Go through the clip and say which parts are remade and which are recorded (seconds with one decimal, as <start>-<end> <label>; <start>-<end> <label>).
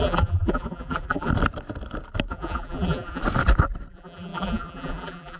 0.0-1.3 remade; 1.3-2.3 recorded; 2.3-3.2 remade; 3.2-3.9 recorded; 3.9-5.4 remade